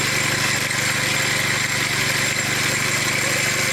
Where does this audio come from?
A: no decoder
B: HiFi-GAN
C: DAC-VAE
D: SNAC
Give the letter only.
A